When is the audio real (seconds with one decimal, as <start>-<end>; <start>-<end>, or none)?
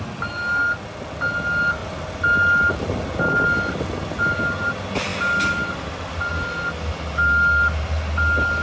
0.0-8.6